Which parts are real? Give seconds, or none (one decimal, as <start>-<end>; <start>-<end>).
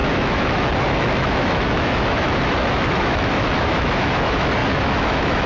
none